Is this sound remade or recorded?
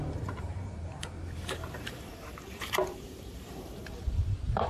remade